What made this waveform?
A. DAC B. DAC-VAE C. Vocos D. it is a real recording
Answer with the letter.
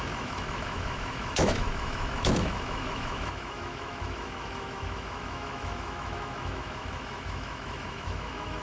B